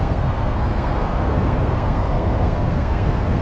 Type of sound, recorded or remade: remade